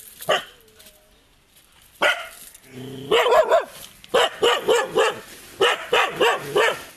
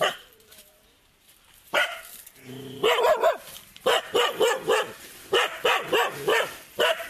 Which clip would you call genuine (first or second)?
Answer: first